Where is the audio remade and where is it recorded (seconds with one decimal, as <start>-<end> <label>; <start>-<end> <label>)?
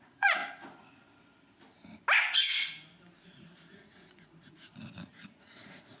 0.0-0.4 remade; 0.4-3.3 recorded; 3.3-6.0 remade